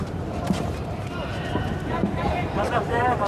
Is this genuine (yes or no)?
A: no